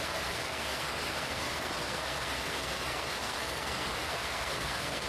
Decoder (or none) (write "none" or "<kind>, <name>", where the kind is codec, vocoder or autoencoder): codec, SNAC